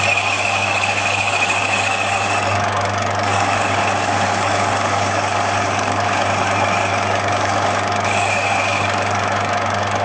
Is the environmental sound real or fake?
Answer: fake